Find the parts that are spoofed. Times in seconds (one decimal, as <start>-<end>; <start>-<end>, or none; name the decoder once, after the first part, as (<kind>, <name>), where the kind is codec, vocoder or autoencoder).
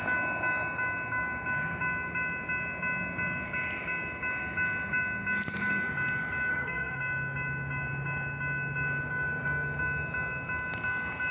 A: 6.5-7.0 (codec, SNAC)